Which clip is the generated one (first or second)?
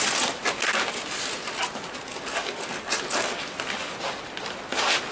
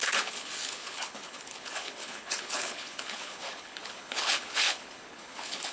second